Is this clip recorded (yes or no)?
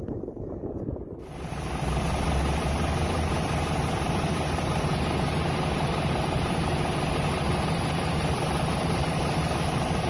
no